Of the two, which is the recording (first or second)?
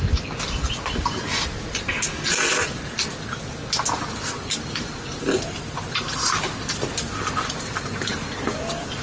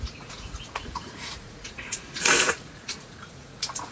first